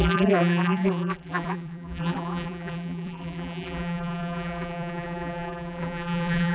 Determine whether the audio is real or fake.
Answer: fake